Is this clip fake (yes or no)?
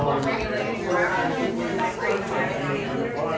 no